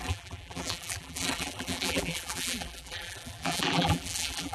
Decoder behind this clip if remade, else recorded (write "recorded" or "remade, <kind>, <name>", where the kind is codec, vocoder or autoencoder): remade, vocoder, BigVGAN v2